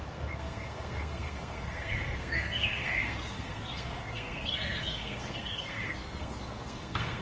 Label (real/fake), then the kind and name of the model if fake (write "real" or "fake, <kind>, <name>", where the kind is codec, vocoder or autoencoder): fake, codec, SNAC